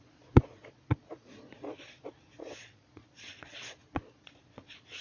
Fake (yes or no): yes